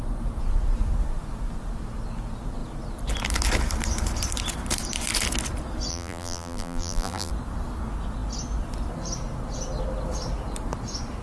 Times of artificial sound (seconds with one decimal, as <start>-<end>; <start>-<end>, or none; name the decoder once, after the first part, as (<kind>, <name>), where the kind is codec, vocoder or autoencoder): 5.9-7.3 (vocoder, BigVGAN v2)